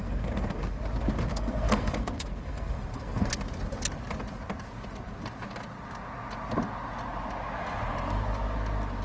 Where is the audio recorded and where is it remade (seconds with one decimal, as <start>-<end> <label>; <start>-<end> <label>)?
0.0-0.8 remade; 0.8-1.3 recorded; 1.3-3.3 remade; 3.3-9.0 recorded